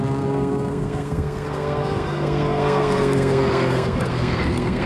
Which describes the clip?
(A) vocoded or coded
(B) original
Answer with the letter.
A